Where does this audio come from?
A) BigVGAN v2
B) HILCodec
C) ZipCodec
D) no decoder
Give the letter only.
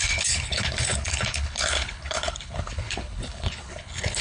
B